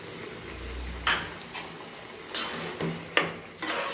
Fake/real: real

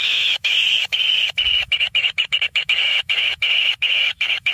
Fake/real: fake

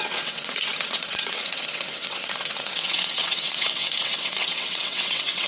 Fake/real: fake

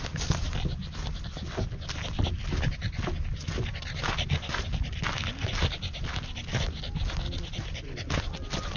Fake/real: real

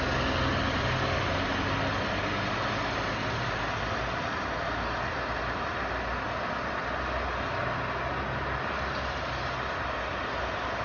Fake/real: real